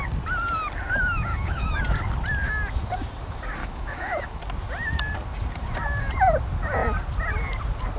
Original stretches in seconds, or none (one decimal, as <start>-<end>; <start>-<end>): 0.0-1.3; 1.8-3.6; 4.4-8.0